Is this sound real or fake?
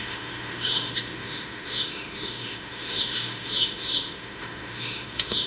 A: fake